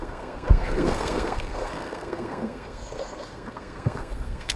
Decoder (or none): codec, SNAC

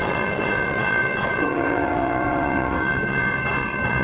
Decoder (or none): vocoder, WaveNeXt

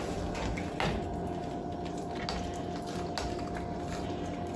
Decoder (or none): none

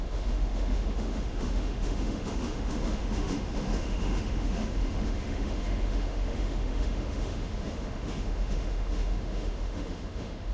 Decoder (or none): autoencoder, DAC-VAE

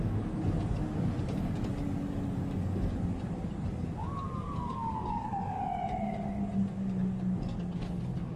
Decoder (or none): codec, DAC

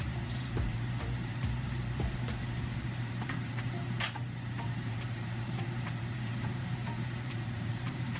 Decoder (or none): vocoder, BigVGAN v2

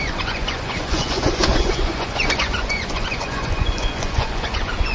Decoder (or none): vocoder, Vocos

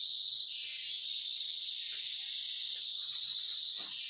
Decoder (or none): none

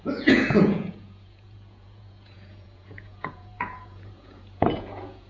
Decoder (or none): vocoder, Vocos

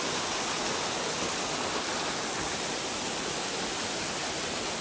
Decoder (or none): none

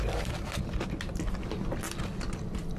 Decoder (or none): vocoder, BigVGAN v2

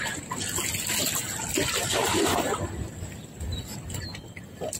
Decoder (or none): none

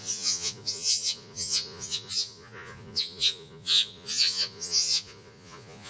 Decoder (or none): vocoder, Vocos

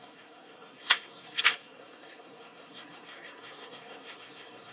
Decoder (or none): codec, SNAC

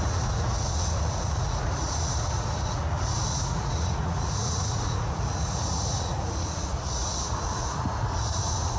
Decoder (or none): vocoder, Vocos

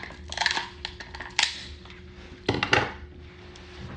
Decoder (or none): none